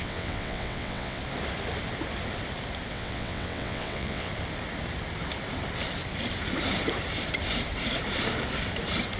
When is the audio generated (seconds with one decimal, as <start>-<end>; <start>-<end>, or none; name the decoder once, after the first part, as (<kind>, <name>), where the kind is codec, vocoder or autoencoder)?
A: 0.0-1.2 (vocoder, WaveNeXt); 2.9-4.3